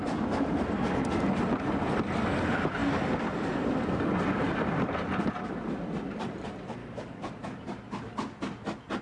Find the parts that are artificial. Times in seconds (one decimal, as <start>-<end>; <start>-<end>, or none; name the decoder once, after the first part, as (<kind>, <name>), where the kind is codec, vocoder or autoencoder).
6.8-7.3 (codec, DAC)